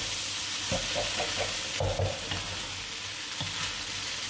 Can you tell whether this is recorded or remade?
recorded